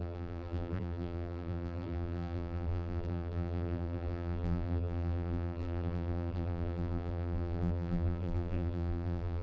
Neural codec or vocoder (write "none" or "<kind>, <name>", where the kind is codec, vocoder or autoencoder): vocoder, BigVGAN v2